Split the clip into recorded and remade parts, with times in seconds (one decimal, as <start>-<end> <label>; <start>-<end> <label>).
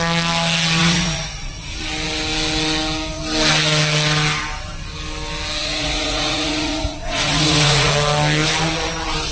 0.0-0.8 recorded; 0.8-1.7 remade; 1.7-5.6 recorded; 5.6-7.9 remade; 7.9-9.3 recorded